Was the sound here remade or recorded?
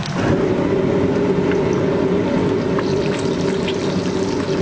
recorded